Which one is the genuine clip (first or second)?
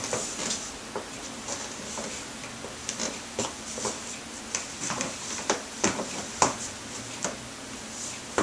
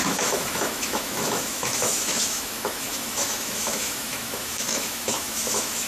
first